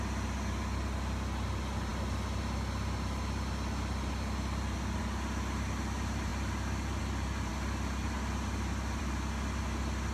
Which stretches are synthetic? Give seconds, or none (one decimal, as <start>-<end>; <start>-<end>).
none

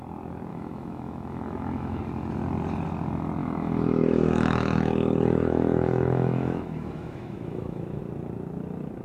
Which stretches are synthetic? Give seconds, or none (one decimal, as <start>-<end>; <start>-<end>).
0.5-2.0; 3.4-8.0

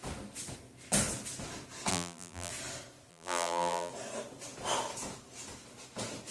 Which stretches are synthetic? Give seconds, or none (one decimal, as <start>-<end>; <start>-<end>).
1.9-2.5; 3.1-3.9

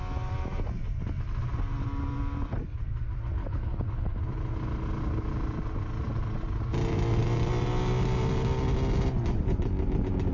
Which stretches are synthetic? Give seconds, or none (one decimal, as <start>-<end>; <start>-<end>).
3.4-4.2